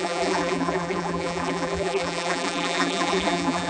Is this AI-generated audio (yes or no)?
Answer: yes